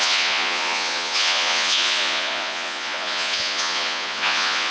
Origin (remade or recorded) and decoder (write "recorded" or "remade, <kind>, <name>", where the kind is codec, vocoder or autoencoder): remade, vocoder, Vocos